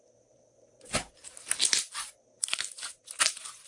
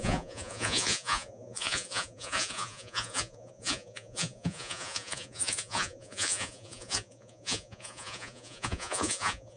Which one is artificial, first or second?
second